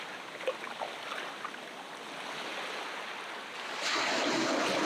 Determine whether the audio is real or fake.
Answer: real